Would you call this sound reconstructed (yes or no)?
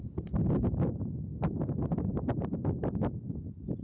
no